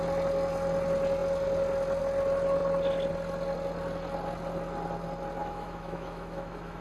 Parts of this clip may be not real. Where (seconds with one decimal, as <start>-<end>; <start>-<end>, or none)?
5.4-6.8